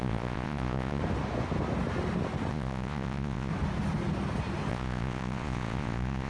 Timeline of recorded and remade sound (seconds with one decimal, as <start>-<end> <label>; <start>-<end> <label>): 0.0-1.0 remade; 1.0-2.5 recorded; 2.5-3.5 remade; 3.5-4.7 recorded; 4.7-6.3 remade